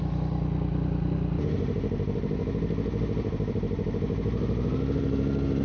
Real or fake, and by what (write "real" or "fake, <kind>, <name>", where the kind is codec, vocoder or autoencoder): real